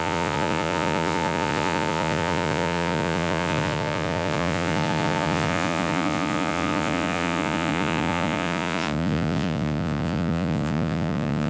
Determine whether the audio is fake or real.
fake